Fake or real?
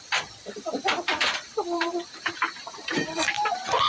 fake